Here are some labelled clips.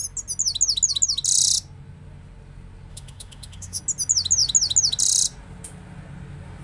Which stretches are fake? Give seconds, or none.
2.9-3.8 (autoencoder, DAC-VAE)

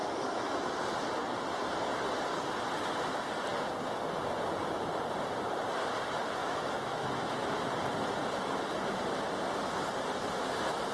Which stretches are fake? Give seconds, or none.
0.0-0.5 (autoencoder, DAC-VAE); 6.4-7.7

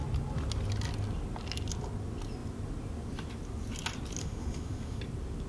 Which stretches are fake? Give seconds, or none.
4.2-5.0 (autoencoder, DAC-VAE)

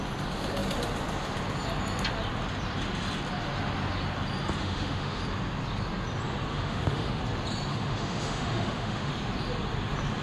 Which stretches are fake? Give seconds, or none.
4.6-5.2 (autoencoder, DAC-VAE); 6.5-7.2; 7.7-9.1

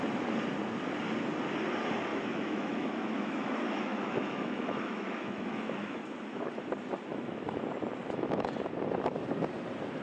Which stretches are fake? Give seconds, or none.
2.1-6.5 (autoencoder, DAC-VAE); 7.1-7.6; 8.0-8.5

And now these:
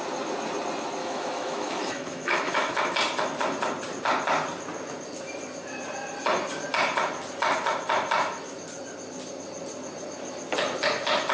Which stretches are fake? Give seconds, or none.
1.0-2.8 (autoencoder, DAC-VAE)

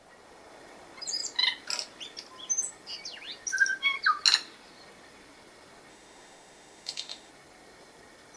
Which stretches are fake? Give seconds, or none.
5.9-7.3 (autoencoder, DAC-VAE)